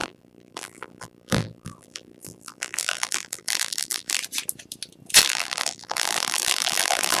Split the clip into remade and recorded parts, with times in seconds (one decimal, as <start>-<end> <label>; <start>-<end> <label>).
0.0-4.2 remade; 4.2-5.2 recorded; 5.2-7.2 remade